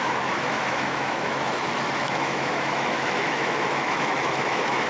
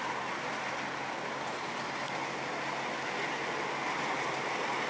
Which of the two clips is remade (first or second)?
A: first